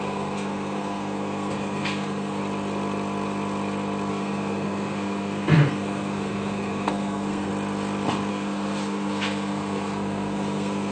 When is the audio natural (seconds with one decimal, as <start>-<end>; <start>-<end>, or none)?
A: 2.4-4.1; 7.5-8.3